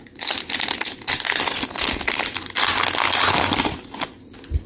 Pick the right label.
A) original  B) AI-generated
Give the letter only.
A